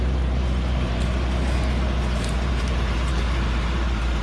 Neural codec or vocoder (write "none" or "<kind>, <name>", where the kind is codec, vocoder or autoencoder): vocoder, BigVGAN v2